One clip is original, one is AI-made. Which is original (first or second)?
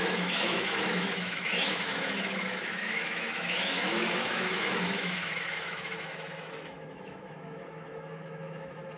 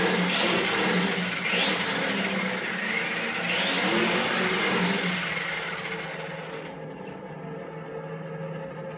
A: second